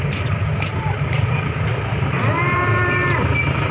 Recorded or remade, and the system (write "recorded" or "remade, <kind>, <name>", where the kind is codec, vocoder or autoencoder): recorded